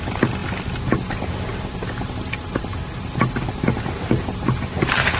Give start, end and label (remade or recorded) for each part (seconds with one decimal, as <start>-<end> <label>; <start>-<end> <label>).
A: 0.0-5.2 recorded